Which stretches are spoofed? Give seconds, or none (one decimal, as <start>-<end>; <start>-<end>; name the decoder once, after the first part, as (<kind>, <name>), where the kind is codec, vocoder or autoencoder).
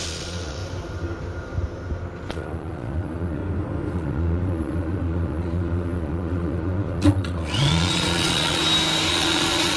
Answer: 0.0-0.6 (vocoder, Vocos); 2.3-3.4; 3.9-8.6; 9.1-9.8